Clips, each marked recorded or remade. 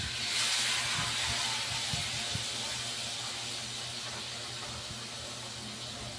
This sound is recorded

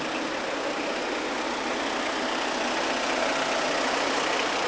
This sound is recorded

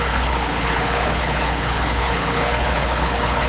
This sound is remade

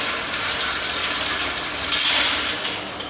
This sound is recorded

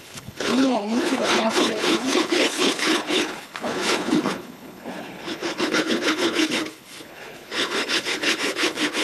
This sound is remade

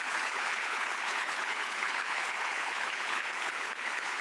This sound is remade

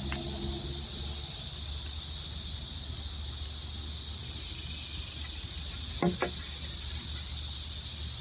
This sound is recorded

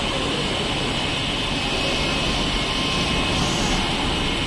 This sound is recorded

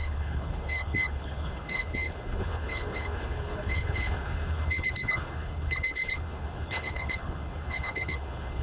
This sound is remade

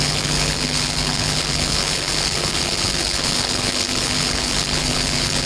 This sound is remade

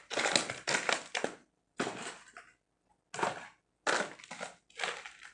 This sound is recorded